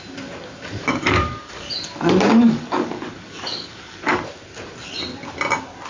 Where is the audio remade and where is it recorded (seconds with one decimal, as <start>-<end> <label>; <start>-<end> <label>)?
0.0-0.8 recorded; 0.8-1.7 remade; 1.7-2.3 recorded; 2.3-4.1 remade; 4.1-5.9 recorded